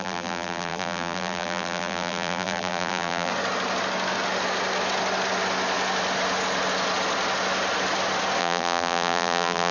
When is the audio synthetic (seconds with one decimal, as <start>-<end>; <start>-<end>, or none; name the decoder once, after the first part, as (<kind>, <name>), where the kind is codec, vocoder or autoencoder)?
0.0-3.3 (vocoder, BigVGAN v2); 8.4-9.7

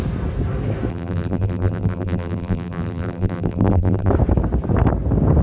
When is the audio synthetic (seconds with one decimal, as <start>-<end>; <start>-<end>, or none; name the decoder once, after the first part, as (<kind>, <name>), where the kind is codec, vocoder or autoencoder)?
0.9-4.1 (vocoder, BigVGAN v2)